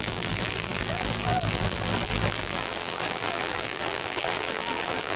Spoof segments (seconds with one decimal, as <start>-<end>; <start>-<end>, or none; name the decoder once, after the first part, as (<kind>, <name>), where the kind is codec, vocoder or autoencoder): 0.0-5.2 (vocoder, BigVGAN v2)